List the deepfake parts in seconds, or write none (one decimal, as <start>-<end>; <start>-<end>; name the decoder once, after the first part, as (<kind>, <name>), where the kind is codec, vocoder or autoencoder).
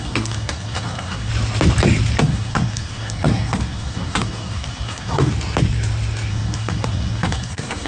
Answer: 0.0-1.3 (codec, SNAC); 2.2-5.3; 6.3-7.9